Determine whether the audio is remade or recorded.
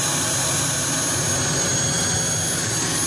recorded